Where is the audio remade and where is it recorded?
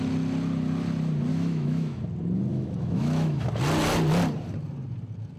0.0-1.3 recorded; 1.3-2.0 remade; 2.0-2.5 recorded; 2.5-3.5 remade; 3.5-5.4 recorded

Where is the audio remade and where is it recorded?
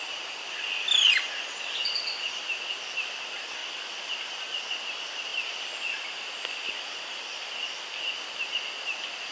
0.0-3.6 recorded; 3.6-4.3 remade; 4.3-5.3 recorded; 5.3-8.0 remade; 8.0-9.3 recorded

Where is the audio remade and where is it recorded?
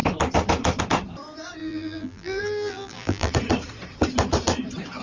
0.0-1.6 recorded; 1.6-3.3 remade; 3.3-5.0 recorded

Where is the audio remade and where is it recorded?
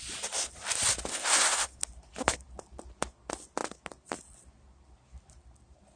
0.0-1.1 recorded; 1.1-1.8 remade; 1.8-6.0 recorded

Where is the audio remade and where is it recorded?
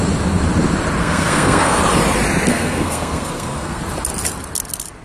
0.0-1.0 recorded; 1.0-1.8 remade; 1.8-2.5 recorded; 2.5-3.8 remade; 3.8-5.0 recorded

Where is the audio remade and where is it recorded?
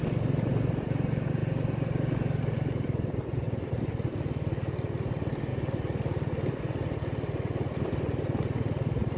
0.0-9.2 recorded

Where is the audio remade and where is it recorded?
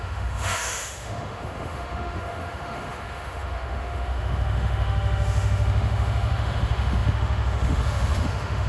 0.0-8.7 remade